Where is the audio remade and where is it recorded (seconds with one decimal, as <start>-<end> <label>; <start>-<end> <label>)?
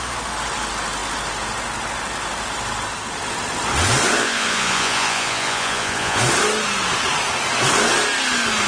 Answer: 0.0-4.2 recorded; 4.2-6.2 remade; 6.2-8.7 recorded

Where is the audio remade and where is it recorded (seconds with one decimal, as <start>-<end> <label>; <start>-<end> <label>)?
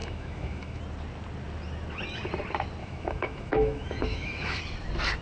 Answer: 0.0-0.8 remade; 0.8-2.8 recorded; 2.8-4.6 remade; 4.6-5.2 recorded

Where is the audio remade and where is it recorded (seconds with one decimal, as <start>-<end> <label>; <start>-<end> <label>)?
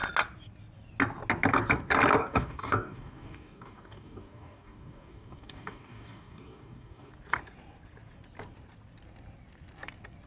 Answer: 0.0-2.2 recorded; 2.2-7.1 remade; 7.1-10.3 recorded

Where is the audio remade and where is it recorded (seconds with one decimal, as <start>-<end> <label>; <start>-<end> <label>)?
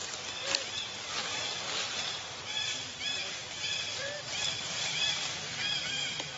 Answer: 0.0-3.0 recorded; 3.0-6.4 remade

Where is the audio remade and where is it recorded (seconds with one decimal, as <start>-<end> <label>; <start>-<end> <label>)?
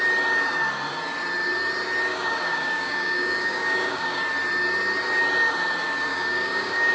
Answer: 0.0-2.1 recorded; 2.1-4.2 remade; 4.2-6.1 recorded; 6.1-6.9 remade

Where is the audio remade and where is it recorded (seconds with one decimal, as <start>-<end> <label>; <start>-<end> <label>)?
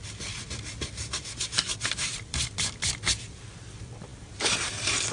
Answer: 0.0-1.8 recorded; 1.8-2.5 remade; 2.5-4.1 recorded; 4.1-5.1 remade